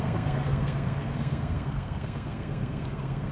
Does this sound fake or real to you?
fake